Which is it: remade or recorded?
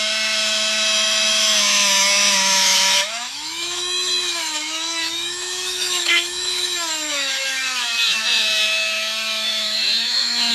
remade